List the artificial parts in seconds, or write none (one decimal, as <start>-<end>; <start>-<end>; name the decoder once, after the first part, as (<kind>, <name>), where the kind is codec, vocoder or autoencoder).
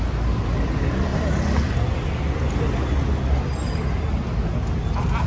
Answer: none